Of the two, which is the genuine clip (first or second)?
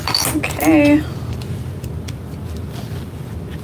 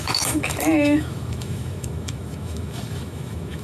first